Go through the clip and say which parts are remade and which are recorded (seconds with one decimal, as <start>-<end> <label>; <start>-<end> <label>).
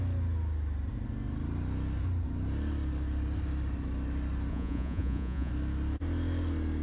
0.0-4.5 recorded; 4.5-5.5 remade; 5.5-6.8 recorded